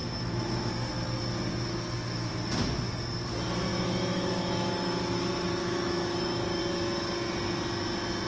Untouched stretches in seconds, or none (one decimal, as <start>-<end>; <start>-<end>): 0.7-1.5; 2.3-3.7; 6.6-8.3